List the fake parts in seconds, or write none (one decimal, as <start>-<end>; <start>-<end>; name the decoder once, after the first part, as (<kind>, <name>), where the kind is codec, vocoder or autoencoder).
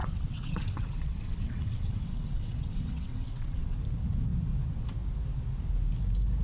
0.0-3.8 (vocoder, WaveNeXt)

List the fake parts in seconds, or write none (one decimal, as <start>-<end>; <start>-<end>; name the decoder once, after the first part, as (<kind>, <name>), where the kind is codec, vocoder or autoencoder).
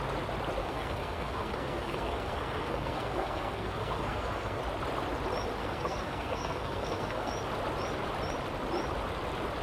0.6-4.6 (codec, SNAC); 5.6-7.3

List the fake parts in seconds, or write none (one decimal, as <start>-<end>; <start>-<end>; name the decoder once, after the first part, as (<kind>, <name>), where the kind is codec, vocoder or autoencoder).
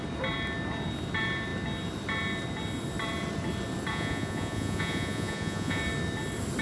3.9-5.8 (vocoder, Vocos)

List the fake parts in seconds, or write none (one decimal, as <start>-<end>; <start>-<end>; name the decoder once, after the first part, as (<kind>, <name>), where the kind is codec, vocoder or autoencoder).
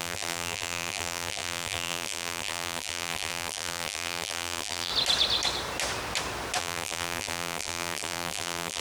0.0-4.9 (vocoder, BigVGAN v2); 6.6-8.8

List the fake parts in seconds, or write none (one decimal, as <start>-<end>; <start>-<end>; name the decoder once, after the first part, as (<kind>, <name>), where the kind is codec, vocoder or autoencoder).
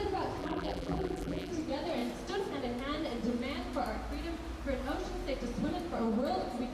0.4-1.5 (vocoder, BigVGAN v2)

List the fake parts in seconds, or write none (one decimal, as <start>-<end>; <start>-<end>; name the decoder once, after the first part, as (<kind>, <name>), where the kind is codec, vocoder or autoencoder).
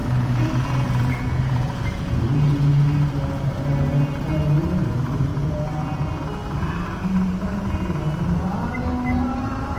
0.0-2.7 (vocoder, Vocos); 5.3-6.1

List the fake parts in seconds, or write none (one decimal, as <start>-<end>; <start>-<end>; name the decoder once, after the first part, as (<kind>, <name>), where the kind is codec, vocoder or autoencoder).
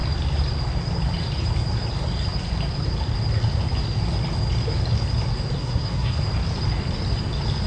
5.6-6.2 (codec, SNAC)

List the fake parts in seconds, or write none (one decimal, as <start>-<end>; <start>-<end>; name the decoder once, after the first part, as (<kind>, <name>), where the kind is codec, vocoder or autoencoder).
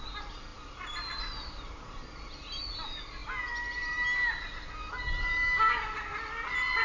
none